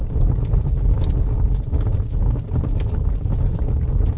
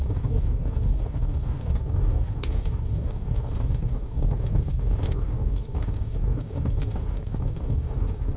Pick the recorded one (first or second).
first